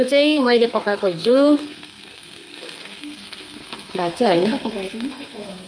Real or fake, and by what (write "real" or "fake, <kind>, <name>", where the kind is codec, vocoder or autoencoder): fake, codec, SNAC